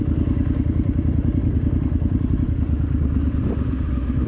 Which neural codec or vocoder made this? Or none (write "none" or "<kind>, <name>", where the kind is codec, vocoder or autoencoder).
vocoder, BigVGAN v2